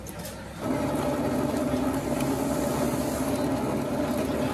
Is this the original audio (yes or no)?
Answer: yes